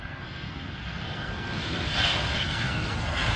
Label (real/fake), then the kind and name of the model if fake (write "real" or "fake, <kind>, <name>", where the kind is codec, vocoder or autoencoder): fake, codec, SNAC